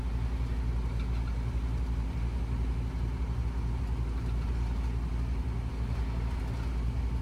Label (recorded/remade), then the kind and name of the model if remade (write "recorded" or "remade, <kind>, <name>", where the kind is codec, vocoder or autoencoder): recorded